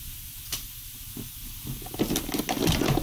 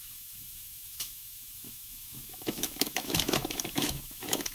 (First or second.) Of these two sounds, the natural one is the first